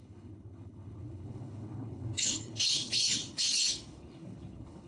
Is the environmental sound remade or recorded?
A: remade